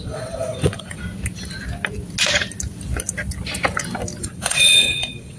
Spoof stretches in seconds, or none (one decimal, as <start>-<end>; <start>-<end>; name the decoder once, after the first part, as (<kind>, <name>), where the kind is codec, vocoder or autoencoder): 0.0-1.0 (vocoder, WaveNeXt); 4.2-5.4